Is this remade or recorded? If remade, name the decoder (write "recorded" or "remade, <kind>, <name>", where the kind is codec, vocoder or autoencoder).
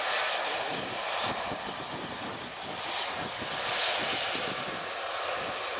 recorded